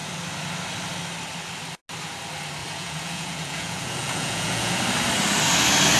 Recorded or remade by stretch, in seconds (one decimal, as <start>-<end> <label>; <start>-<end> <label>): 0.0-2.6 recorded; 2.6-4.7 remade; 4.7-6.0 recorded